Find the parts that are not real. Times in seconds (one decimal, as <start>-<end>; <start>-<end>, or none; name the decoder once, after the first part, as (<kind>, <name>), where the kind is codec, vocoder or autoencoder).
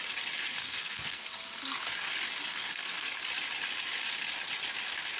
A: 0.6-1.4 (codec, SNAC); 2.5-3.2